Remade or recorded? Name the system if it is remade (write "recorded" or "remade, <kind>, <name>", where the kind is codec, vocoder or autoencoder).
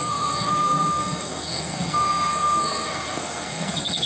remade, codec, SNAC